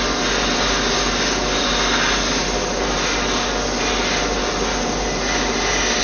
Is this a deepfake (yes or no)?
no